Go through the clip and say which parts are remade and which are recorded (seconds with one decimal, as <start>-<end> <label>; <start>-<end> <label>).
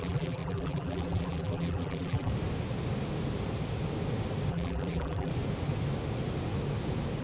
0.0-2.3 remade; 2.3-4.5 recorded; 4.5-5.3 remade; 5.3-7.2 recorded